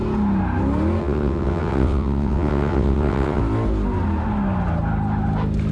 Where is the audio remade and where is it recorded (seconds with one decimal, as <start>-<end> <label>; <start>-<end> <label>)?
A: 0.0-1.0 recorded; 1.0-3.4 remade; 3.4-5.7 recorded